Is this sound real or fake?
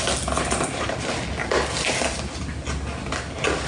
real